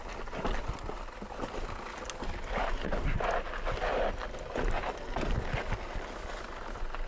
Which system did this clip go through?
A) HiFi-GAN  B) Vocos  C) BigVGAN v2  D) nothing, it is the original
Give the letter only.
D